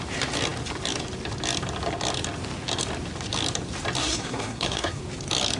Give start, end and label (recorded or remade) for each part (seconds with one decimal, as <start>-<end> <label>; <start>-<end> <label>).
0.0-4.0 recorded; 4.0-5.0 remade; 5.0-5.6 recorded